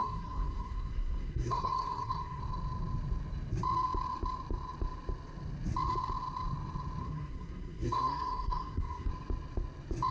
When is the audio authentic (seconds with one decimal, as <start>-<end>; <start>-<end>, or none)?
2.4-7.0; 9.1-10.1